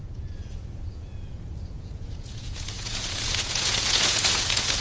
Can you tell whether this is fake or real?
fake